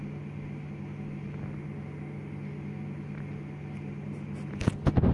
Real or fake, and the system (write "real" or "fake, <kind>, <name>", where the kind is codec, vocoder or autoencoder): real